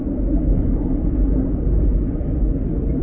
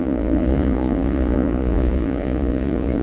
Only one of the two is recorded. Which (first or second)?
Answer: first